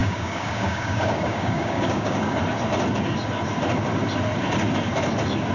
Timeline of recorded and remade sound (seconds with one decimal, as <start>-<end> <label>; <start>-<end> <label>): 0.0-2.4 remade; 2.4-5.5 recorded